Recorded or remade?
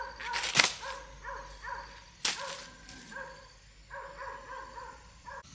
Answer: recorded